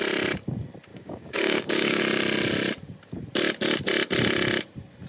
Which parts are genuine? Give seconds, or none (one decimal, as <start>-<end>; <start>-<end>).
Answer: 0.0-0.9; 2.0-5.1

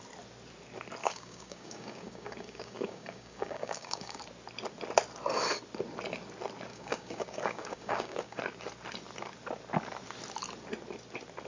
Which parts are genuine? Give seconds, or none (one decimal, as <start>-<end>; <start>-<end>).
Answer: 0.0-1.0; 4.2-6.7; 8.4-11.5

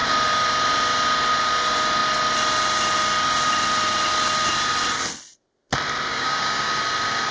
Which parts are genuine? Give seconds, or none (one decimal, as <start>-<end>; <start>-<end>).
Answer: 0.0-6.1; 6.8-7.3